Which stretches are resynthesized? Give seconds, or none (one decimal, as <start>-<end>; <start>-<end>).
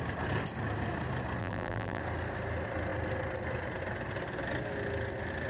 1.4-2.0